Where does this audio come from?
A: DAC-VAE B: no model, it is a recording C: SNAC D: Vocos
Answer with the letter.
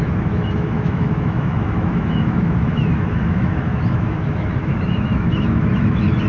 A